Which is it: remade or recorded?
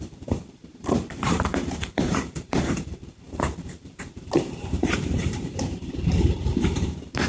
remade